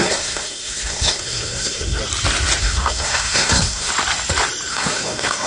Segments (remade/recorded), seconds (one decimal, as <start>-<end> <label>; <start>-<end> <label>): 0.0-2.0 remade; 2.0-2.6 recorded; 2.6-3.9 remade; 3.9-4.7 recorded; 4.7-5.5 remade